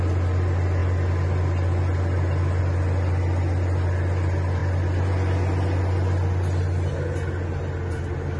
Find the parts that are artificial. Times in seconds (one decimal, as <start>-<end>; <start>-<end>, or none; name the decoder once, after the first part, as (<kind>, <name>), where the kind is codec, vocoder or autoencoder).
none